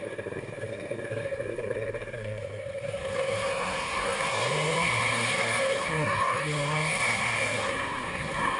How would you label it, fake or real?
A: fake